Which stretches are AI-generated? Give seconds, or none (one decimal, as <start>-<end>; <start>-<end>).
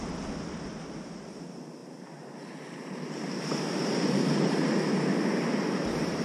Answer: none